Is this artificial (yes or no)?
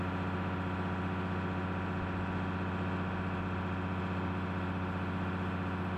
no